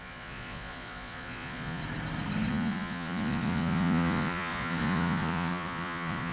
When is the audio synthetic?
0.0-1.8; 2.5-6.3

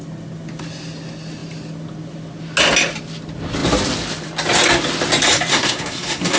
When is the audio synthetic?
5.5-6.4

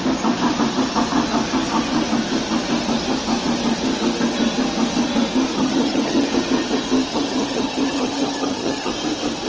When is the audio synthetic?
5.5-6.3; 7.1-8.9

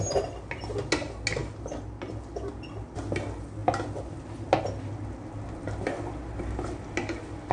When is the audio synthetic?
none